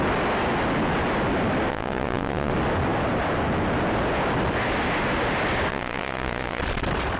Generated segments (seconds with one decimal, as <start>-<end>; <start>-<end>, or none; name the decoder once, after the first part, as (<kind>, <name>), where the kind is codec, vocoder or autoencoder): 1.7-2.5 (vocoder, Vocos); 5.7-6.6